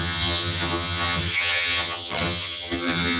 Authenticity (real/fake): fake